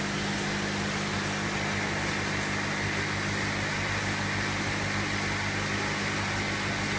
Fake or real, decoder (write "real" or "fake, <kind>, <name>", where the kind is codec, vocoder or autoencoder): real